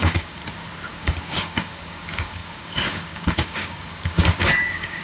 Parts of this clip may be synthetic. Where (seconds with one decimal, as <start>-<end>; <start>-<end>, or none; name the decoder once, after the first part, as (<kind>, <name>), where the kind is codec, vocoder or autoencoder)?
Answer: 0.0-0.4 (codec, DAC); 0.9-5.0